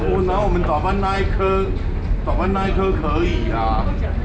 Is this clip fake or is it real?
real